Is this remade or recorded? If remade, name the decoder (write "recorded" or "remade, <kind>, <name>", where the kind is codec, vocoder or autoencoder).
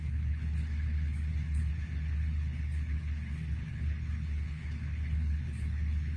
remade, codec, HILCodec